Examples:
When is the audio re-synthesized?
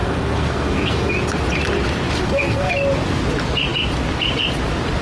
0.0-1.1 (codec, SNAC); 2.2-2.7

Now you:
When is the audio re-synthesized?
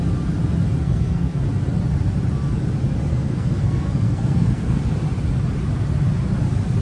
0.8-1.4 (codec, SNAC); 3.1-4.8